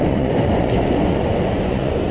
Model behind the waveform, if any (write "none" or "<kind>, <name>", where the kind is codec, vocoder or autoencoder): vocoder, Vocos